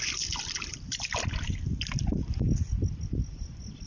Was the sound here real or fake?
real